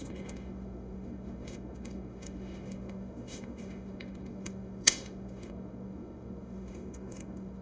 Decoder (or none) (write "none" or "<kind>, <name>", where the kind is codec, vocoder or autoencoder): autoencoder, DAC-VAE